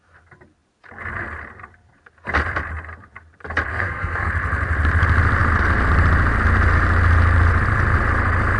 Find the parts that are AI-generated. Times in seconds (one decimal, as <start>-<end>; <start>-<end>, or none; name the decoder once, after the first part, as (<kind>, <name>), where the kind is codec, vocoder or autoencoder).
3.7-4.3 (codec, SNAC)